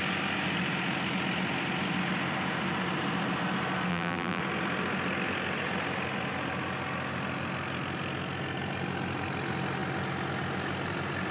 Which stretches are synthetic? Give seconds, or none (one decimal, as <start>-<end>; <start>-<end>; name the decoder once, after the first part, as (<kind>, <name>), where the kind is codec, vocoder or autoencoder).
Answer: 3.9-4.4 (vocoder, BigVGAN v2)